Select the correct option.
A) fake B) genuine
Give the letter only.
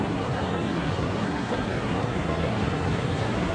A